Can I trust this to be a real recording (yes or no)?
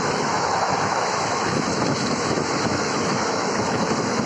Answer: no